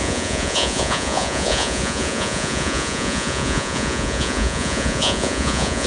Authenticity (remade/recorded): remade